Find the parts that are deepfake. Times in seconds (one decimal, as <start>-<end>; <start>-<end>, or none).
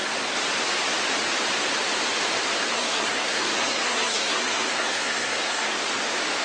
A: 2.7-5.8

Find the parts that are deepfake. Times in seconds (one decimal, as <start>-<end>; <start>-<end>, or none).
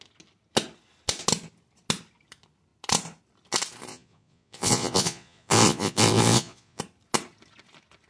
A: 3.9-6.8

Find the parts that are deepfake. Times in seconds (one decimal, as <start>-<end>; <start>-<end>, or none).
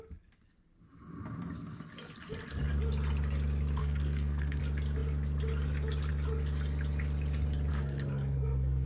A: 3.8-4.6; 7.7-8.9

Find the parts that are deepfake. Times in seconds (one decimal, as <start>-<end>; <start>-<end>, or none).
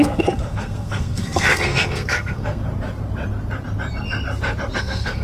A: 0.0-2.6; 4.8-5.2